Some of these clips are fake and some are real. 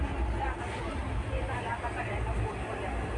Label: real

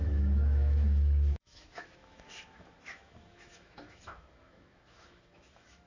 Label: fake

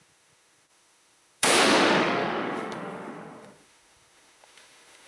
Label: fake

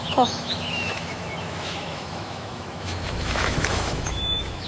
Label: fake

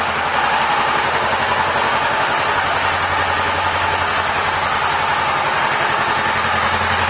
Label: real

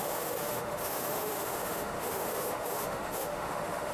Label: fake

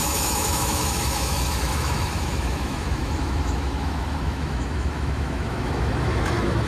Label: fake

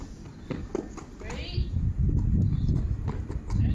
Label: real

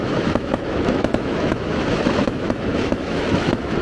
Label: fake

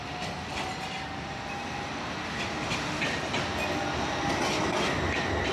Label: real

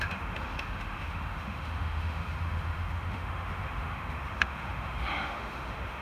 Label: fake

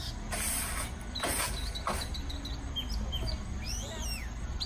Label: real